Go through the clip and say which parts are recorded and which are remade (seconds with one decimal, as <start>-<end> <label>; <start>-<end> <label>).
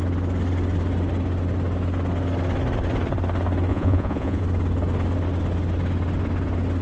0.0-3.7 recorded; 3.7-4.4 remade; 4.4-6.8 recorded